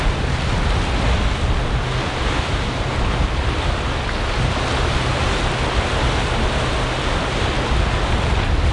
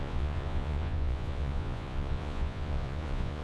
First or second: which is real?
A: first